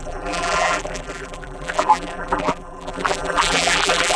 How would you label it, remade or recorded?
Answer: remade